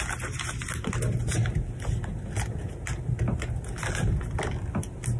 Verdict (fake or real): real